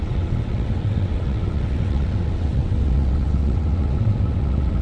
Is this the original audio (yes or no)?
no